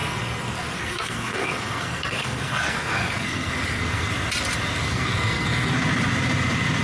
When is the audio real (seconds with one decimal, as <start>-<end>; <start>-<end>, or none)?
4.1-4.8; 5.7-6.8